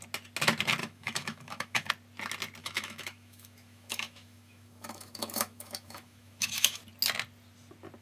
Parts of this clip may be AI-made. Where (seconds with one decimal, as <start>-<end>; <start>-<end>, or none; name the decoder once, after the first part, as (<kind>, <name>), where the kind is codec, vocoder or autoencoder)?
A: 0.8-1.9 (autoencoder, DAC-VAE); 2.6-6.8